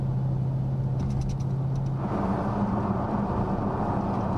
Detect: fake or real real